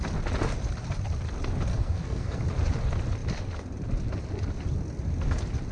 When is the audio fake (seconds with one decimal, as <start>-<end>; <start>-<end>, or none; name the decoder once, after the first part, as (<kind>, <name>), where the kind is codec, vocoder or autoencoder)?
1.7-2.4 (codec, SNAC)